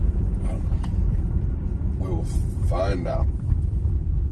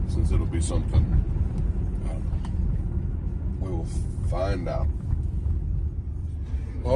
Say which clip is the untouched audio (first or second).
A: second